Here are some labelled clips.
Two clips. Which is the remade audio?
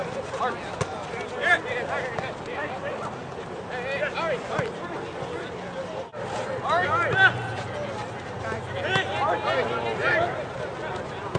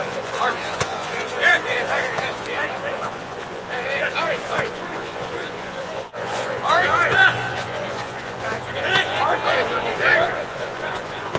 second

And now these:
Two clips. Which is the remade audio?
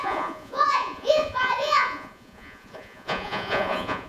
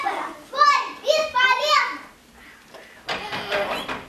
first